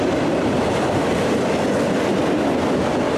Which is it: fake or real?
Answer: real